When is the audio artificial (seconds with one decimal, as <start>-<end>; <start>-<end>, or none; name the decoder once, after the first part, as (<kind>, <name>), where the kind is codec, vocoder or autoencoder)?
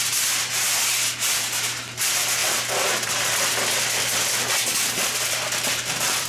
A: 2.4-6.3 (vocoder, BigVGAN v2)